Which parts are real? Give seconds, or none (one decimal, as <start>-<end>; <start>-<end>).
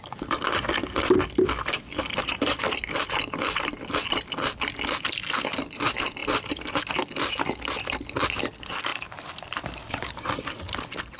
0.0-2.2; 2.8-6.2; 6.8-8.9; 10.2-11.2